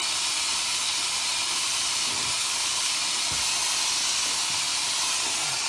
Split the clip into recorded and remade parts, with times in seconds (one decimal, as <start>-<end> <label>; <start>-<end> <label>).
0.0-2.4 recorded; 2.4-2.9 remade; 2.9-5.7 recorded